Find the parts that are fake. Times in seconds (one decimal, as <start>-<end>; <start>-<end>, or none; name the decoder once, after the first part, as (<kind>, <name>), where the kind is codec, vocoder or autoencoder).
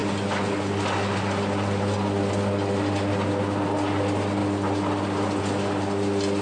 none